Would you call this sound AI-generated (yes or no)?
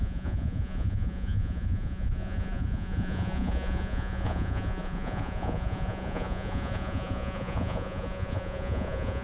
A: yes